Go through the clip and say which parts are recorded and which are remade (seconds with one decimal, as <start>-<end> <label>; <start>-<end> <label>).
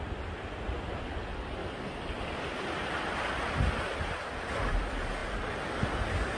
0.0-6.4 recorded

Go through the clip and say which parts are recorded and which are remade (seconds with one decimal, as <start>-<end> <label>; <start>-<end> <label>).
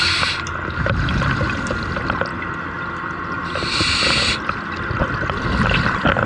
0.0-6.3 recorded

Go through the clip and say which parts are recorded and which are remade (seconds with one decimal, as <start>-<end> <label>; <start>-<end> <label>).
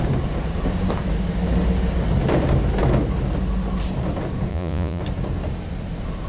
0.0-4.5 recorded; 4.5-5.0 remade; 5.0-6.3 recorded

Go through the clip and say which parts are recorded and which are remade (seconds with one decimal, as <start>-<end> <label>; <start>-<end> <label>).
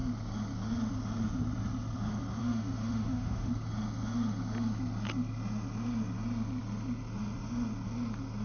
0.0-2.4 recorded; 2.4-3.5 remade; 3.5-8.4 recorded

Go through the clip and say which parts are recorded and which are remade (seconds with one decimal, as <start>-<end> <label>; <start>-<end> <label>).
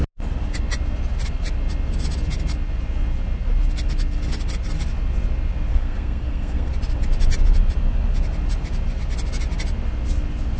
0.0-5.7 recorded; 5.7-6.7 remade; 6.7-10.6 recorded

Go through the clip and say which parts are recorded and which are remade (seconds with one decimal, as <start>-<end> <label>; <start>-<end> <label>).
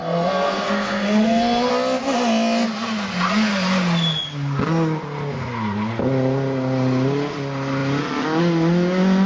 0.0-1.7 remade; 1.7-9.3 recorded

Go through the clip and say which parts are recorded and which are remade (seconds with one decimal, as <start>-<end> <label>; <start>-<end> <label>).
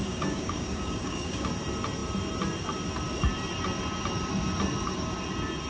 0.0-1.5 remade; 1.5-5.7 recorded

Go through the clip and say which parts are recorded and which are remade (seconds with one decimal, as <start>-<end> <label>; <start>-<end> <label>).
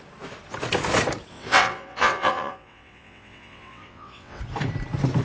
0.0-1.3 recorded; 1.3-4.4 remade; 4.4-5.2 recorded